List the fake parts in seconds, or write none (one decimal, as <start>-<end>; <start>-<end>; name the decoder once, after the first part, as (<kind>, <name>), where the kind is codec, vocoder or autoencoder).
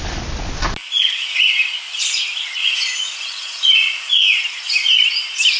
0.8-1.4 (vocoder, Vocos); 2.6-4.1